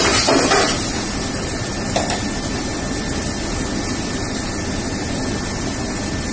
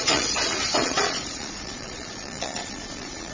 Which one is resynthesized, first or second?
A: second